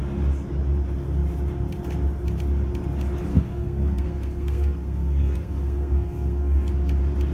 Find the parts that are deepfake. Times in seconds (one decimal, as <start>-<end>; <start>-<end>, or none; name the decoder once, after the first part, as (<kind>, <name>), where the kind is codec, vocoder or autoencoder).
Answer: 3.3-6.7 (codec, SNAC)